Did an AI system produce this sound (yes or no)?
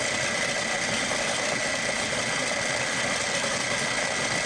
no